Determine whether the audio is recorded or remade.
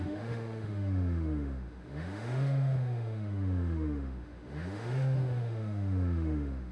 remade